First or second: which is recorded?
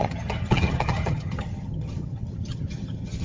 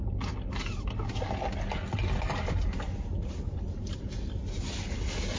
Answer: second